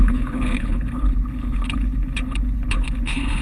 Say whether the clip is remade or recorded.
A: remade